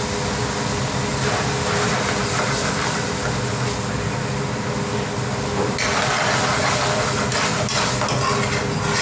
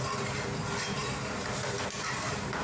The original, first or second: first